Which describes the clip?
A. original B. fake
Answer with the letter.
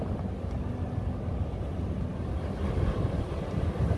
A